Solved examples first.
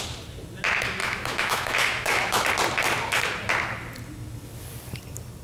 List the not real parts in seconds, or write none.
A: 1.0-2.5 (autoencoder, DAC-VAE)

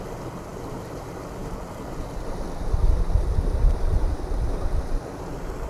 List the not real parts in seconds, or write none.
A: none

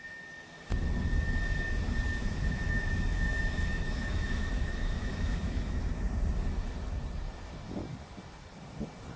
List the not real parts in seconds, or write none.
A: 2.1-6.1 (autoencoder, DAC-VAE)

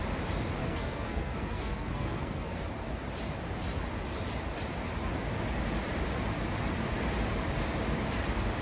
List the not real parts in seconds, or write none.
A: 0.6-2.6 (codec, SNAC)

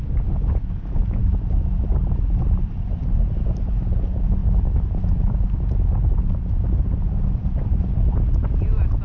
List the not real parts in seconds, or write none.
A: none